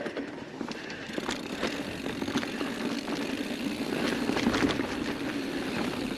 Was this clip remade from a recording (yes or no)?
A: yes